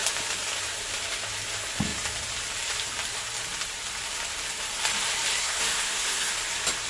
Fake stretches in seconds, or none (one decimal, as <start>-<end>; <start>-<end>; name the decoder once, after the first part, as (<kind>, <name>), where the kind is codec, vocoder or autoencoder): 5.3-6.3 (codec, SNAC)